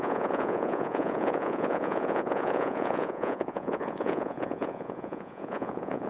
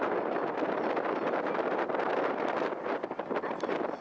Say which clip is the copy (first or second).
first